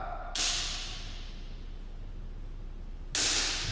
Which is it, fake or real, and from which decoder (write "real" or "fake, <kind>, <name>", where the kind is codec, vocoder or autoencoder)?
real